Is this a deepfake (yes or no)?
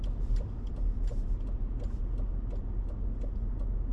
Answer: no